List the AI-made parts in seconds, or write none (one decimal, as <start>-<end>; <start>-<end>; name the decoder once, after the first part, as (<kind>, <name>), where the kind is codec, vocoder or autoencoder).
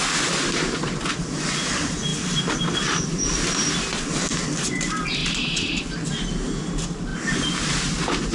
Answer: 2.1-3.8 (vocoder, BigVGAN v2); 5.2-5.8